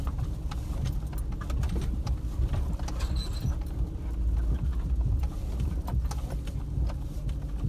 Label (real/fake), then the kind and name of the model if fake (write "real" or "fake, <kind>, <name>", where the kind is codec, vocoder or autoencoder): real